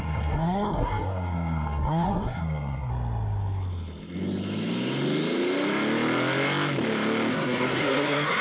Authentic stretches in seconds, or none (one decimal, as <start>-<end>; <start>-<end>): 2.9-7.3

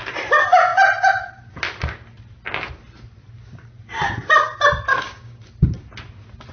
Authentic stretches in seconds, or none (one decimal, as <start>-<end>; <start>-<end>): 0.0-4.9; 5.4-6.5

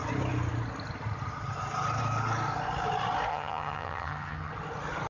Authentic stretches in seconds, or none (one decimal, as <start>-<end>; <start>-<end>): 0.0-3.3; 4.5-5.1

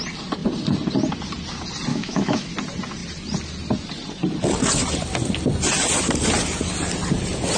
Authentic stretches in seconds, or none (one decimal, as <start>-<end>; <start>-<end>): 0.0-1.9; 2.5-7.6

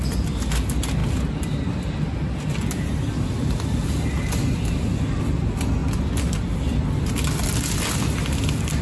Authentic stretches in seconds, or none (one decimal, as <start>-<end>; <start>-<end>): 0.0-8.8

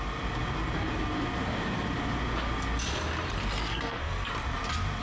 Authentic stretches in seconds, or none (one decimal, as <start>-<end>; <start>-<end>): 0.0-3.7; 4.3-5.0

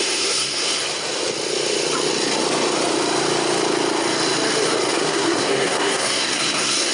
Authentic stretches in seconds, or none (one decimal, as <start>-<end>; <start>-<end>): 0.8-4.9